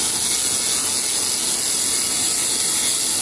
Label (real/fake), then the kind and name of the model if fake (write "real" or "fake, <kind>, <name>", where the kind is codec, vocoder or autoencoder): real